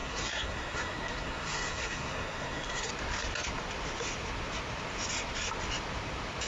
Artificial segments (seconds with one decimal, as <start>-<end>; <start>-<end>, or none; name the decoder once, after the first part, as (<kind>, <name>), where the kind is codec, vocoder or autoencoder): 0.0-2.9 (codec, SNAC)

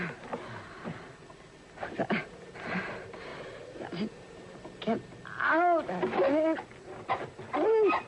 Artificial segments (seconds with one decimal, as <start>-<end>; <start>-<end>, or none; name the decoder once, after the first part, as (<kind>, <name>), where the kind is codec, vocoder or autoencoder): none

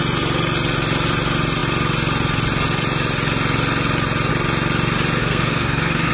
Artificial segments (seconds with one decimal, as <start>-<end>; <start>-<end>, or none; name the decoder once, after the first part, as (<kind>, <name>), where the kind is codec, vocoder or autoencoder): 5.2-6.1 (codec, SNAC)

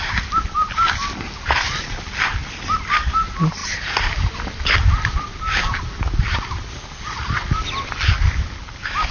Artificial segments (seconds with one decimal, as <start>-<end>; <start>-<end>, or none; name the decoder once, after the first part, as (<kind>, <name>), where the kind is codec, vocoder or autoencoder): none

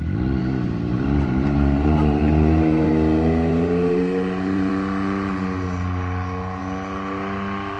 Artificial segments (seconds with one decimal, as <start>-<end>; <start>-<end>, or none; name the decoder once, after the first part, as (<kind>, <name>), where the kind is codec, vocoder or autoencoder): 0.4-2.9 (vocoder, BigVGAN v2); 3.5-4.7

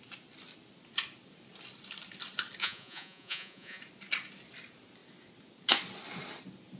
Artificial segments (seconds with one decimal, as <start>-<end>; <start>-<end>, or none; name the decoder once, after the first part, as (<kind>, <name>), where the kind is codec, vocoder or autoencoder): 2.6-3.8 (vocoder, Vocos)

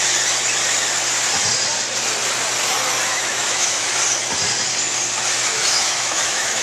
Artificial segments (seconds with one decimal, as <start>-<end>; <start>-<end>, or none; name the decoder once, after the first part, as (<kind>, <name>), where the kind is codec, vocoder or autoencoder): 3.1-3.9 (autoencoder, DAC-VAE); 5.5-6.6